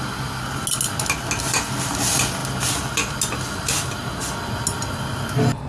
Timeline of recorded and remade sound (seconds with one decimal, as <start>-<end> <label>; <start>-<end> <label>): 0.0-5.7 recorded